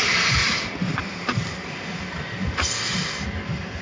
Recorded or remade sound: remade